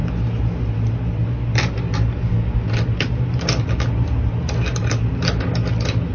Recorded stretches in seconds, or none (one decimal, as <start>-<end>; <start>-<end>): 0.0-6.1